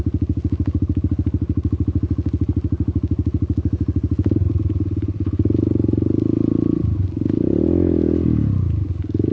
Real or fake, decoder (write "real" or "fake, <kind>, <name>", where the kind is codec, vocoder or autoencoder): real